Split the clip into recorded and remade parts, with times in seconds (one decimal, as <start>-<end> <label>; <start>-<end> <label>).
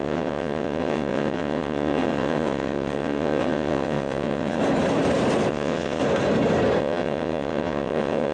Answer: 0.0-4.6 remade; 4.6-5.5 recorded; 5.5-6.0 remade; 6.0-6.8 recorded; 6.8-8.3 remade